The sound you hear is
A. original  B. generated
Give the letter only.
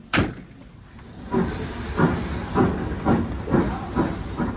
A